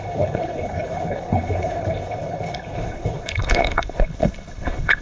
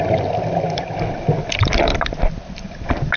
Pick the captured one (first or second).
second